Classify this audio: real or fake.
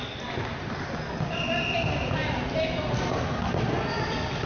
real